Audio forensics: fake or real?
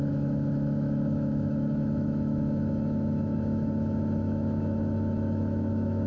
fake